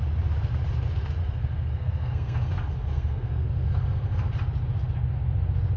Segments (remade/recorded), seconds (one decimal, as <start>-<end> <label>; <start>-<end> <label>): 0.0-1.2 recorded; 1.2-4.3 remade; 4.3-5.8 recorded